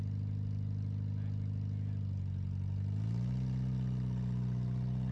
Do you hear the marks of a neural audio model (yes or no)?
no